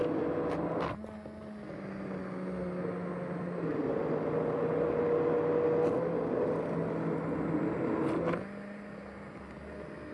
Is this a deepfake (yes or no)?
no